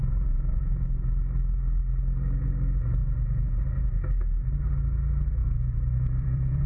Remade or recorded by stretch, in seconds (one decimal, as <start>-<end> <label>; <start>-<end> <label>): 0.0-1.1 remade; 1.1-3.0 recorded; 3.0-3.6 remade; 3.6-5.4 recorded; 5.4-6.7 remade